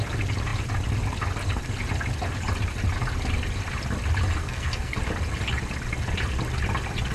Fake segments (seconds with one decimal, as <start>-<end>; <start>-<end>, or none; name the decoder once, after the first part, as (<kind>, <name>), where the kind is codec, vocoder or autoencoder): 4.4-5.0 (codec, SNAC)